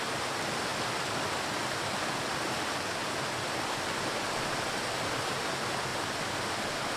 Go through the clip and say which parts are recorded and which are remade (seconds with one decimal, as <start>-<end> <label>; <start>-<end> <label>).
0.0-3.0 recorded; 3.0-5.1 remade; 5.1-5.9 recorded; 5.9-6.6 remade; 6.6-7.0 recorded